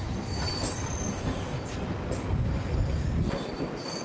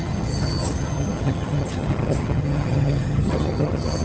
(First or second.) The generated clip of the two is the second